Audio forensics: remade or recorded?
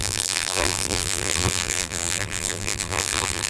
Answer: remade